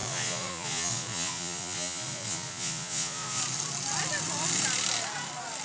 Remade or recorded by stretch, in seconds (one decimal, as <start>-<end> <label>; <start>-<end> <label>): 0.0-3.4 remade; 3.4-5.6 recorded